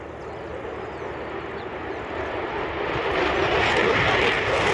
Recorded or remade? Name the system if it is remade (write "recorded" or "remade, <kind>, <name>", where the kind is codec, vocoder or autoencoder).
recorded